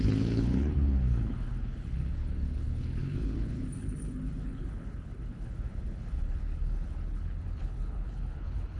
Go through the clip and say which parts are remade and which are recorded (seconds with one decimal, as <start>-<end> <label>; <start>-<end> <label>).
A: 0.0-8.8 remade

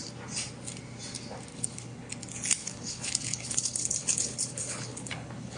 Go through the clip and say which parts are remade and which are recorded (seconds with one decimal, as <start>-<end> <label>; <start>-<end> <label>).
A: 0.0-1.5 recorded; 1.5-2.1 remade; 2.1-2.6 recorded; 2.6-5.6 remade